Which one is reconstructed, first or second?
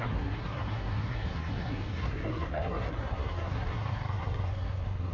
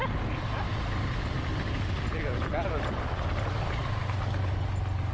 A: first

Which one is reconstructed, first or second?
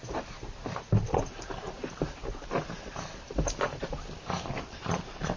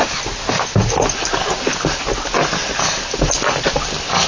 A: first